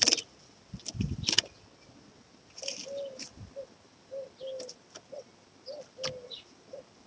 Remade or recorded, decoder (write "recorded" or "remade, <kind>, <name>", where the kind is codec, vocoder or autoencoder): recorded